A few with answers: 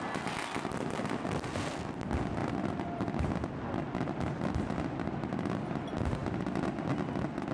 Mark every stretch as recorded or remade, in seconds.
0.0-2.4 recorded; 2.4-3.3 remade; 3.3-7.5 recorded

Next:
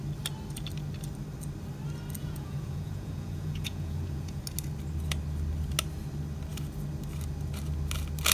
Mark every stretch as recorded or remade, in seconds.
0.0-2.2 recorded; 2.2-4.4 remade; 4.4-8.3 recorded

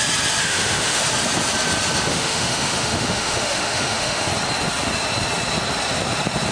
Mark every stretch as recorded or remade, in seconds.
0.0-0.4 recorded; 0.4-1.0 remade; 1.0-2.1 recorded; 2.1-4.3 remade; 4.3-6.5 recorded

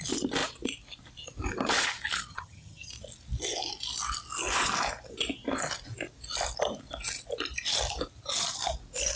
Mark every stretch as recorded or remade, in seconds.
0.0-2.3 recorded; 2.3-2.9 remade; 2.9-9.2 recorded

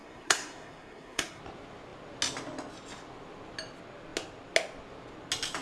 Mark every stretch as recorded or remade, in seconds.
0.0-1.4 remade; 1.4-5.6 recorded

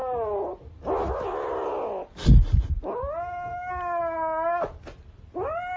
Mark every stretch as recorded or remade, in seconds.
0.0-5.8 recorded

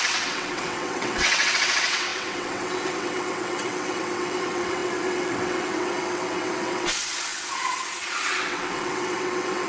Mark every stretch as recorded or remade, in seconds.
0.0-9.7 remade